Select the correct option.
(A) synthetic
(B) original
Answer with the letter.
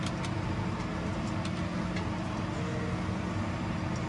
B